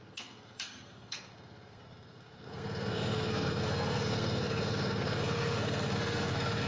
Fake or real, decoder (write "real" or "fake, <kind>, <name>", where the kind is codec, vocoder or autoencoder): fake, codec, SNAC